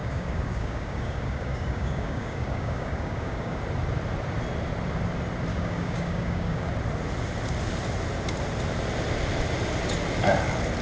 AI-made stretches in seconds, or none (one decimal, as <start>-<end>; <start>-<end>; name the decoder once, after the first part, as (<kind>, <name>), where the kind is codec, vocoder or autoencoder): 0.0-3.6 (codec, DAC); 5.5-6.7